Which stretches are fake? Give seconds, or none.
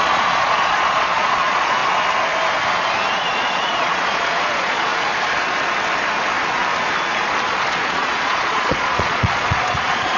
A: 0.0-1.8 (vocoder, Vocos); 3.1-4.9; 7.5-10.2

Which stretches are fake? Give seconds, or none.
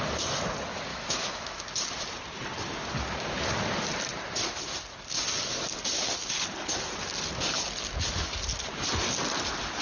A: 0.9-1.6 (autoencoder, DAC-VAE)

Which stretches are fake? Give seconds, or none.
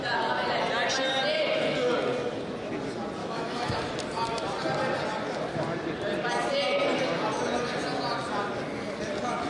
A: 3.2-3.8 (autoencoder, DAC-VAE)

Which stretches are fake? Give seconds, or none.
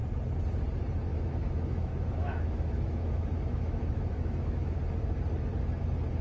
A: 1.1-4.8 (autoencoder, DAC-VAE)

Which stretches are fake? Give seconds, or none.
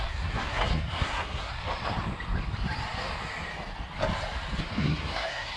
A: 0.0-1.6 (codec, SNAC); 4.6-5.6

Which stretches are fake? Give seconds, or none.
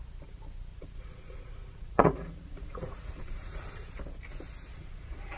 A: 0.7-3.9 (vocoder, Vocos); 4.7-5.4